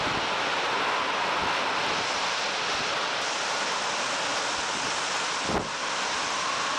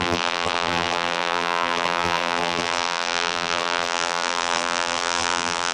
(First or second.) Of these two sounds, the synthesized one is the second